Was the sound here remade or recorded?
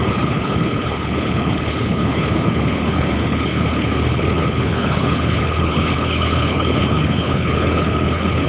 remade